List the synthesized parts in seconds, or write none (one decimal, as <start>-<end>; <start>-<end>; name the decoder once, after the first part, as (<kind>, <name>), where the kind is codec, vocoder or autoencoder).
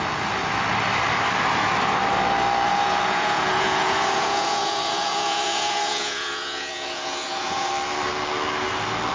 2.7-7.7 (vocoder, Vocos)